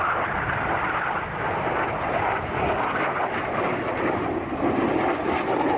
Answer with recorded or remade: recorded